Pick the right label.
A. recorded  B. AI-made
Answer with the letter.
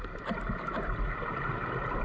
A